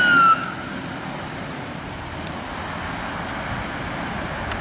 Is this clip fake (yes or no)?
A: no